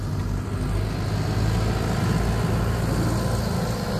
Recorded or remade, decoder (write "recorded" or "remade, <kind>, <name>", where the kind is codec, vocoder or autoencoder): recorded